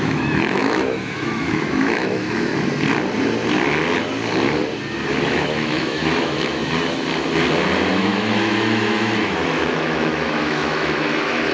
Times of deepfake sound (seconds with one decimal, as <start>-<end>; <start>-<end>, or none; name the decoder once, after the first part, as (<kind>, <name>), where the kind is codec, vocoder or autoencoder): 0.0-2.5 (autoencoder, DAC-VAE); 5.2-6.6; 7.9-11.5